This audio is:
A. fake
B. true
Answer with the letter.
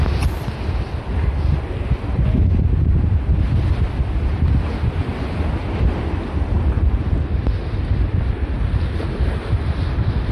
B